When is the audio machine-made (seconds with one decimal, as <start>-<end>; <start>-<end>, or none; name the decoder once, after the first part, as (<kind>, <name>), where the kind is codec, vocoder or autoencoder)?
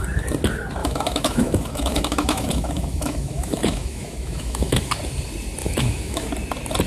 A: 0.8-4.9 (autoencoder, DAC-VAE); 5.6-6.3